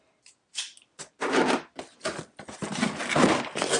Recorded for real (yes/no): yes